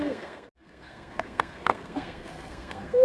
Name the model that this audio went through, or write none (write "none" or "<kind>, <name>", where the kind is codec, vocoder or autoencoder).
codec, SNAC